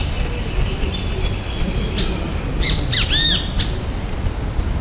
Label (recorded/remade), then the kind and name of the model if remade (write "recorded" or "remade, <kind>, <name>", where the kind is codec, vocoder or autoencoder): recorded